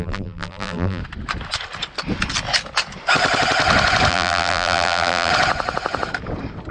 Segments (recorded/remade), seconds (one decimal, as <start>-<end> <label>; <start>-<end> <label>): 0.0-1.0 remade; 1.0-4.1 recorded; 4.1-5.3 remade; 5.3-6.7 recorded